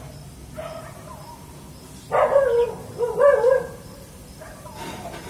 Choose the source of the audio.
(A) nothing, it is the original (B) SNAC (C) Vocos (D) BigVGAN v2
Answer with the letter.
A